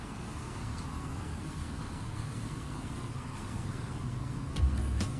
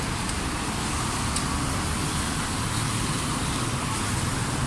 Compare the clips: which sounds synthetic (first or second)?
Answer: first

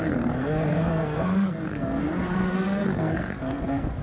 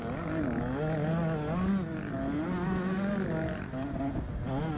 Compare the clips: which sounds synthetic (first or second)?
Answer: first